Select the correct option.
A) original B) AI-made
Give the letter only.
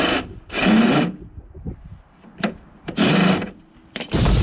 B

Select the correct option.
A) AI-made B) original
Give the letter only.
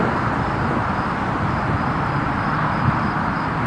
B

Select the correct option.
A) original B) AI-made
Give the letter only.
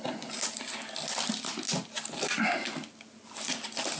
A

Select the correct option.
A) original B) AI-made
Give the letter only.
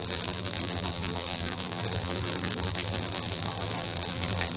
B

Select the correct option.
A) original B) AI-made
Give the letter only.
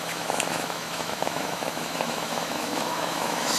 B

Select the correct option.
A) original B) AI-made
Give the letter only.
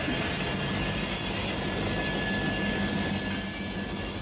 A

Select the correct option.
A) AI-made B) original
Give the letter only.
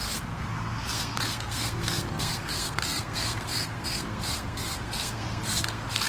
A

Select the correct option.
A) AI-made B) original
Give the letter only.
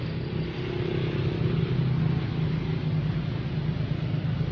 B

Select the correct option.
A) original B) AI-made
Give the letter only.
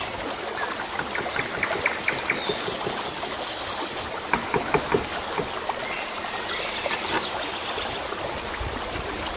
A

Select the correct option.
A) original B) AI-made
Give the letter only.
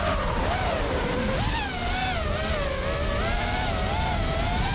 A